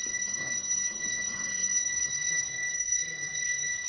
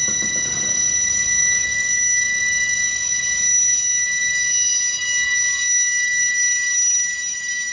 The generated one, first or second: first